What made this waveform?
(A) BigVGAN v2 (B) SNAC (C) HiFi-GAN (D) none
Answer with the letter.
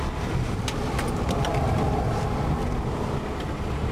D